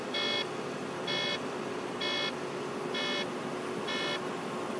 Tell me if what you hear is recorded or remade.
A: recorded